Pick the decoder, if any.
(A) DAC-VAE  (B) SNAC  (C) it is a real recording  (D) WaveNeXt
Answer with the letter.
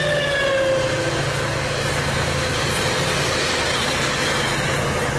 C